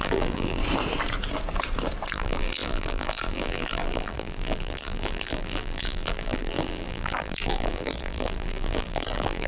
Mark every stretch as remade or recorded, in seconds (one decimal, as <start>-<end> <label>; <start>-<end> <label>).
0.0-0.6 remade; 0.6-2.1 recorded; 2.1-9.5 remade